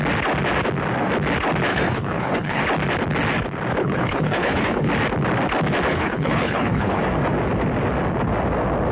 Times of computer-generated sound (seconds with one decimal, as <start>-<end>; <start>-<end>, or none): 1.7-2.6; 3.8-4.9; 5.9-7.0